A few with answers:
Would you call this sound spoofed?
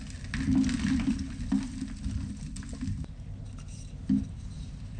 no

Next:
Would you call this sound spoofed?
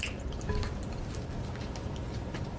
no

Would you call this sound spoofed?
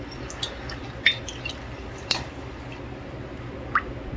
no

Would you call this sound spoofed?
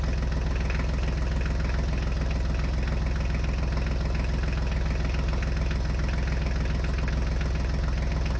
no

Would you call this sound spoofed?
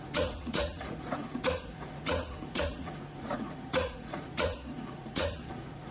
yes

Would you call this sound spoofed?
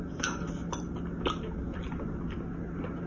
no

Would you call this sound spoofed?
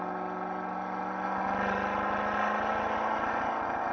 no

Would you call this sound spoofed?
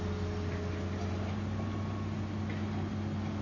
no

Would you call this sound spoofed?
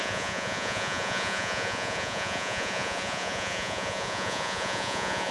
yes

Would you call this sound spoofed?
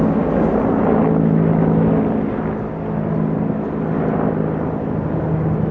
no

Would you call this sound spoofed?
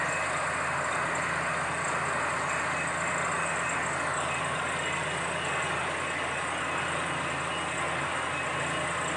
no